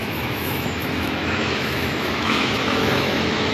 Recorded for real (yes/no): no